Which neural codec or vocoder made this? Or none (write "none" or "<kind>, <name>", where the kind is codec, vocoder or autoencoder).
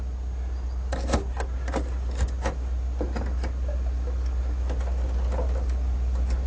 none